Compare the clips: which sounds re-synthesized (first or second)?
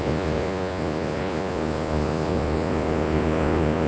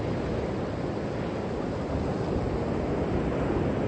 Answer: first